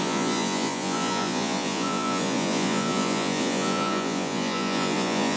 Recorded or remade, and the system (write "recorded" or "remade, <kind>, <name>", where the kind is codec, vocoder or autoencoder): remade, vocoder, Vocos